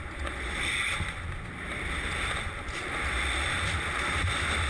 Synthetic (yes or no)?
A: no